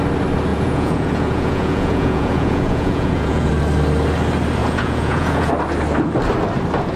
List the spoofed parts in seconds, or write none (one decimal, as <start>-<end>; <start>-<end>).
0.5-3.5; 4.6-5.5